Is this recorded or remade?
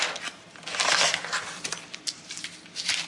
recorded